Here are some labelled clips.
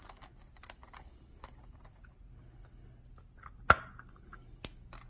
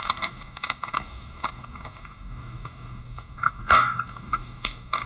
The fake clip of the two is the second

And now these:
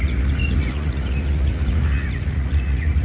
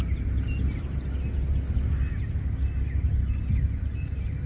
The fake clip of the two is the first